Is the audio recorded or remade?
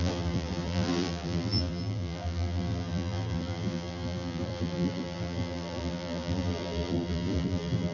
remade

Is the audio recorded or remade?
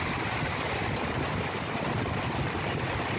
recorded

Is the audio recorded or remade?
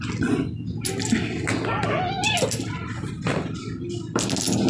recorded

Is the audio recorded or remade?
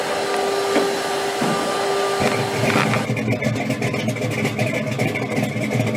recorded